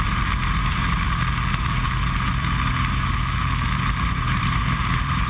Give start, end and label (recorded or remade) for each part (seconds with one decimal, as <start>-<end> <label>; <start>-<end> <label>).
0.0-0.8 remade; 0.8-4.0 recorded; 4.0-5.3 remade